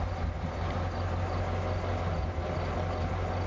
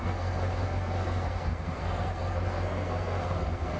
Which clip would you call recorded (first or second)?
first